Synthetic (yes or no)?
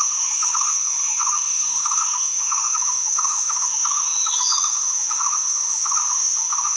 yes